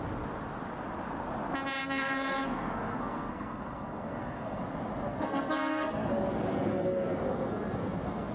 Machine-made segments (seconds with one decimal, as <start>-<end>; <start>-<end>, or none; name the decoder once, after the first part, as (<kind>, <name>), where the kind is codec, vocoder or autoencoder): 1.8-4.6 (codec, SNAC); 5.1-6.1; 6.5-8.3